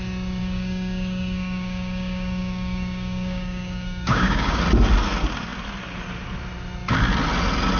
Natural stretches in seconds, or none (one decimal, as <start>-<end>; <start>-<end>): 0.0-0.4; 4.6-7.8